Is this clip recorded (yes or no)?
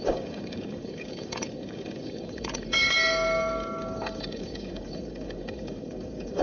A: no